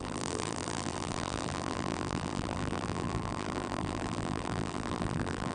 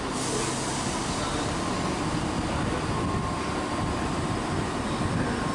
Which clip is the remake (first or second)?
first